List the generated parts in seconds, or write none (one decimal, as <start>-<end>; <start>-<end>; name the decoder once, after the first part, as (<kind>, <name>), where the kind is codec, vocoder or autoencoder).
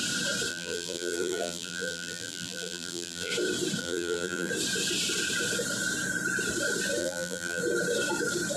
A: 0.5-3.3 (vocoder, BigVGAN v2); 3.8-4.5; 7.0-7.6